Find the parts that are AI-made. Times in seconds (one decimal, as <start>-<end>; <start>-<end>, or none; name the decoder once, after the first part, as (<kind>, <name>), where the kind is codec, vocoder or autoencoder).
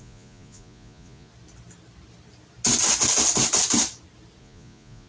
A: 0.0-1.3 (vocoder, Vocos); 4.4-5.1